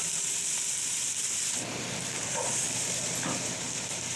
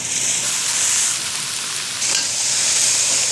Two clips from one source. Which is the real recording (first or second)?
second